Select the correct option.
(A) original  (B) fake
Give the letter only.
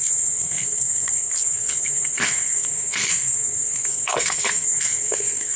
B